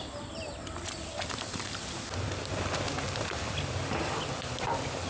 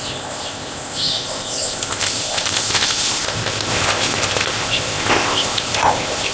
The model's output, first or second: second